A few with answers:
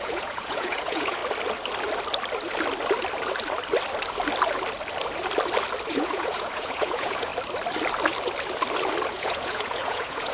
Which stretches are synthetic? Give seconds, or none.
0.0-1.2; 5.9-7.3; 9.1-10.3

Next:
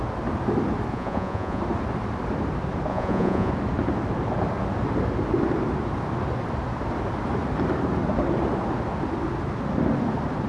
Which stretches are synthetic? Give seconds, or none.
0.9-1.6; 2.9-3.5

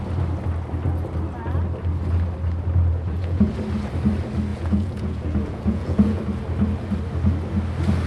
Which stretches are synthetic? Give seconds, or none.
2.9-3.5; 4.5-6.2

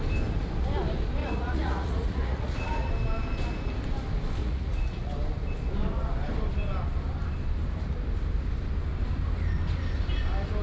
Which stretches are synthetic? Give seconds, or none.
1.2-2.9; 4.4-5.1

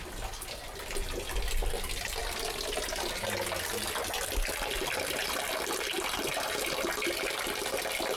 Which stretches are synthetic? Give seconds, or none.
none

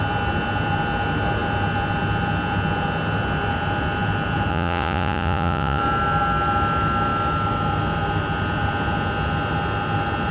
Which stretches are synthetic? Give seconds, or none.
4.5-5.8

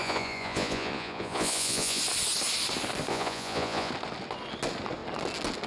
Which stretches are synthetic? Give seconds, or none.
0.0-2.0; 3.1-3.9